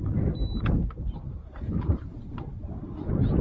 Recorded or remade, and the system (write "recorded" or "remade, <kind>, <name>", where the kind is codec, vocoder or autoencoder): remade, vocoder, BigVGAN v2